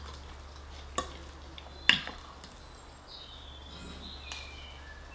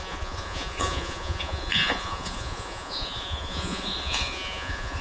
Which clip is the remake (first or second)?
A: second